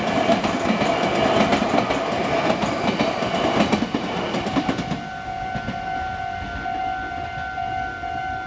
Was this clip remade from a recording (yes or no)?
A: no